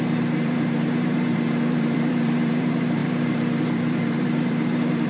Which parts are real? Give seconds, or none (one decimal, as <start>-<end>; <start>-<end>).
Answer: none